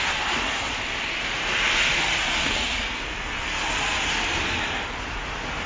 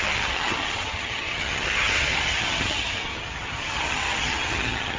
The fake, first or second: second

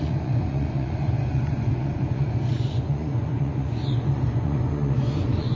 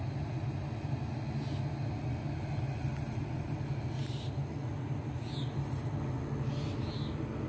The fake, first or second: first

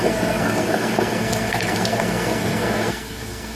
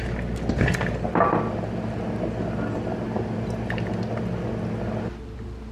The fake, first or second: first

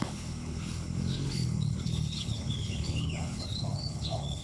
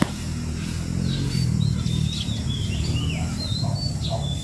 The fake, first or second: first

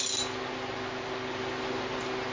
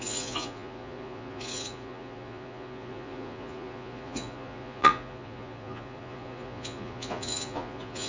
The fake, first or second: second